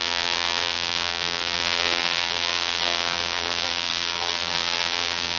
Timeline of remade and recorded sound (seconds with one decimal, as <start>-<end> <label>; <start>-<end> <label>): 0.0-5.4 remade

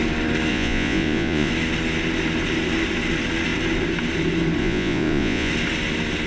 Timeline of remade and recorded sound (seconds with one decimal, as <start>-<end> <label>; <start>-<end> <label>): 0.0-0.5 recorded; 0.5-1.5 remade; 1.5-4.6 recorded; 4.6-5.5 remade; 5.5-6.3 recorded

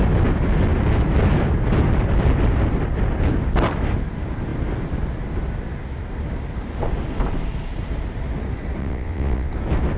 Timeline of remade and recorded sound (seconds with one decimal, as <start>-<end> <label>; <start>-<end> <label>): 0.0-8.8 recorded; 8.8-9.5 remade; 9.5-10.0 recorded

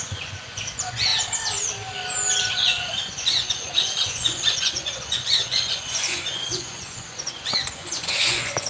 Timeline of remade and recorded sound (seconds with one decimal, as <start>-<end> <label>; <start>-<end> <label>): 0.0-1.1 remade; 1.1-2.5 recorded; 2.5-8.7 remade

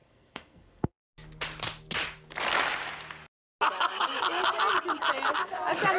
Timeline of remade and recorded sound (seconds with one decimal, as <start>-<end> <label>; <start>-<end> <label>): 0.0-1.1 remade; 1.1-6.0 recorded

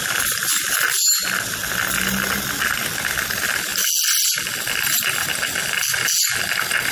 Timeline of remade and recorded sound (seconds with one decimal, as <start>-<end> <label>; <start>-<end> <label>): 0.0-6.9 recorded

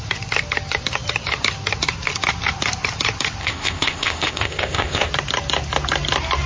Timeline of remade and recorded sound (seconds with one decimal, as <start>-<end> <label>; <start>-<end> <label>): 0.0-3.4 recorded; 3.4-5.1 remade; 5.1-6.5 recorded

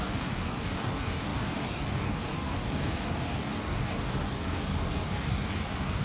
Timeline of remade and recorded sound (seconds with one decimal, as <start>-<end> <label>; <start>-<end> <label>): 0.0-6.0 remade